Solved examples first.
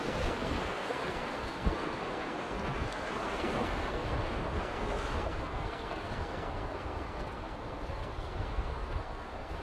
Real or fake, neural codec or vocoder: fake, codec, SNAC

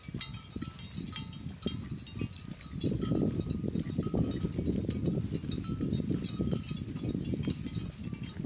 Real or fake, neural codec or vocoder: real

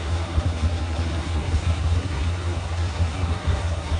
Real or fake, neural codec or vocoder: fake, codec, SNAC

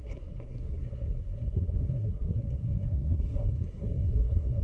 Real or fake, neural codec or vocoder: fake, codec, SNAC